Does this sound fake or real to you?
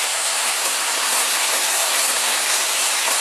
fake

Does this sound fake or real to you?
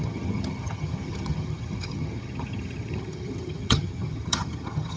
fake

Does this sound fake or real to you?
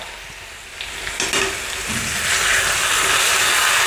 real